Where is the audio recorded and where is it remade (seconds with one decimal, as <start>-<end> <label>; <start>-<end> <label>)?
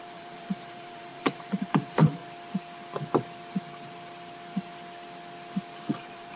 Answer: 0.0-2.2 remade; 2.2-6.0 recorded; 6.0-6.4 remade